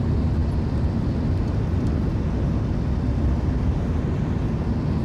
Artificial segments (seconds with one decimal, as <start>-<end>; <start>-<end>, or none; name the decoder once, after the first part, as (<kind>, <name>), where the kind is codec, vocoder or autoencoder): none